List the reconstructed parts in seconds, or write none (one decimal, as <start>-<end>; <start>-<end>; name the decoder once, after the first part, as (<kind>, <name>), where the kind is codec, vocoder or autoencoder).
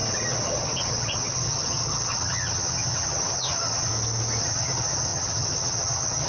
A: 0.0-3.9 (vocoder, HiFi-GAN); 4.4-6.3